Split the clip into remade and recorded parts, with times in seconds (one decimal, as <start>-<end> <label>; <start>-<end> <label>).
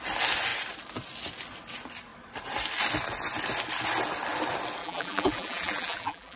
0.0-4.8 recorded; 4.8-6.4 remade